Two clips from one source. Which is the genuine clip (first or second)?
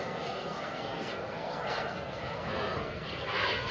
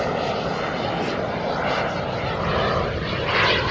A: second